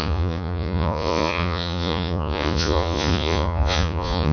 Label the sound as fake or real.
fake